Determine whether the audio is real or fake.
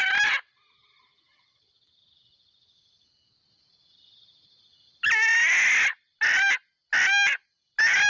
real